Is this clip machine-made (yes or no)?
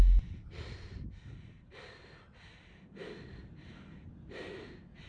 no